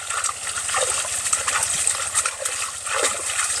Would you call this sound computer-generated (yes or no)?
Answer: no